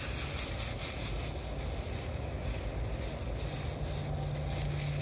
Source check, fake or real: real